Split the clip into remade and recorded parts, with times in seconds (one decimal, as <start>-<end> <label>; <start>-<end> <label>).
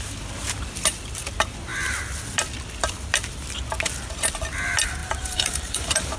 0.0-5.0 recorded; 5.0-6.2 remade